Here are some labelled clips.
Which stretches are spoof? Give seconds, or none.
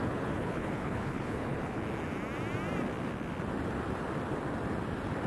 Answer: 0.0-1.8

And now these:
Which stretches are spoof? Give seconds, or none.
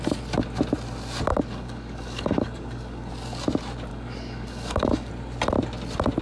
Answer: 1.3-3.1; 3.9-5.1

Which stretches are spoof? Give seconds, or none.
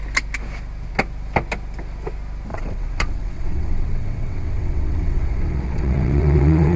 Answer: 2.5-6.8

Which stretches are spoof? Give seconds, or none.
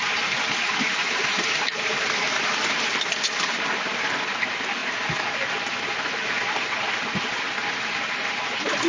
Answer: none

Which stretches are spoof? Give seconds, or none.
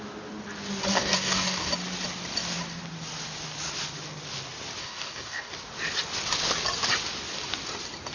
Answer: 0.9-1.7; 4.8-5.5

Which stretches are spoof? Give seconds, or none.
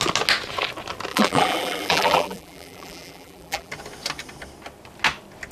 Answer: 1.1-3.7